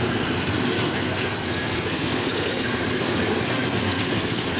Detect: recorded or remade remade